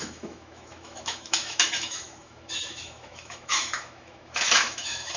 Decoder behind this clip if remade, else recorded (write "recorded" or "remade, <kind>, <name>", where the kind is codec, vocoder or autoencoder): remade, autoencoder, DAC-VAE